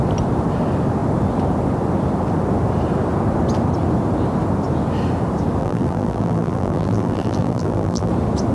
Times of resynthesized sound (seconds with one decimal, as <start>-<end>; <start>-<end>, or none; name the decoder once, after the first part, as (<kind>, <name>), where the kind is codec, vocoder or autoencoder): 5.6-8.1 (vocoder, BigVGAN v2)